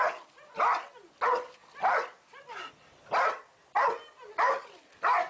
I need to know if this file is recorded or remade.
recorded